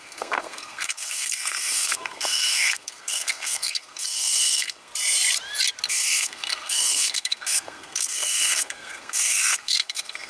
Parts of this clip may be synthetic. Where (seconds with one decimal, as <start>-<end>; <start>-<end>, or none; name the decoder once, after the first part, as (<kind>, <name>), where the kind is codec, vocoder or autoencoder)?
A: 0.0-4.9 (codec, SNAC); 5.9-10.3

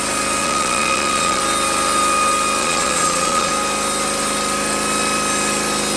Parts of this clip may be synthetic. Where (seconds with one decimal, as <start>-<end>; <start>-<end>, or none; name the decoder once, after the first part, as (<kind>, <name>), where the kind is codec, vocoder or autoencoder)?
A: 0.4-1.4 (vocoder, Vocos); 2.6-3.5

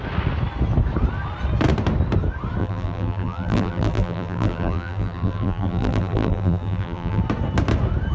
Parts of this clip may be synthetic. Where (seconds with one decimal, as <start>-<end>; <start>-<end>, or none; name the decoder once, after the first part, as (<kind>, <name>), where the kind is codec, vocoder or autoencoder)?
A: 2.6-7.2 (vocoder, BigVGAN v2)

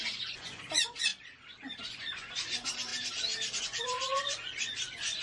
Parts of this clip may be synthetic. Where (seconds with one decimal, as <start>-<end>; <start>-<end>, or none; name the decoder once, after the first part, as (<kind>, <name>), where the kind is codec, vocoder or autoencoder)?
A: 0.0-1.1 (vocoder, Vocos); 1.8-2.9; 3.6-5.2